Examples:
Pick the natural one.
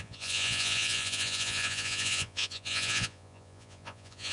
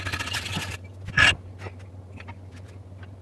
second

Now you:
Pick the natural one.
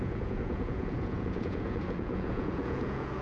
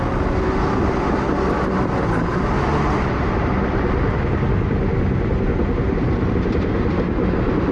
second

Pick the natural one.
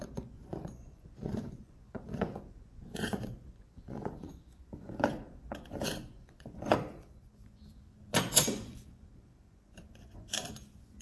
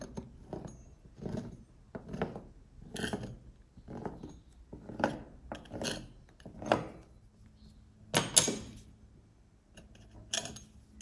second